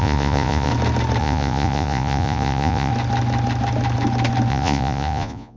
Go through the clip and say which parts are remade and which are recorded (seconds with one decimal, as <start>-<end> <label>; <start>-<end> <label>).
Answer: 0.0-0.7 remade; 0.7-1.2 recorded; 1.2-2.9 remade; 2.9-4.5 recorded; 4.5-5.6 remade